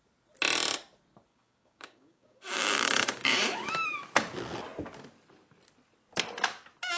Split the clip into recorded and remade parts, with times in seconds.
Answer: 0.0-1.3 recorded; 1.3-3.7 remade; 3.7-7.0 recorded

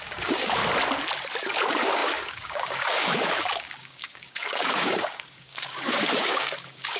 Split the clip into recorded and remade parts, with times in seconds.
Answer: 0.0-0.6 remade; 0.6-1.4 recorded; 1.4-7.0 remade

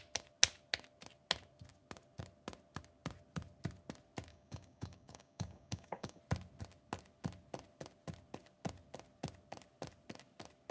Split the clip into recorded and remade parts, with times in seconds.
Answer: 0.0-4.3 recorded; 4.3-6.2 remade; 6.2-10.7 recorded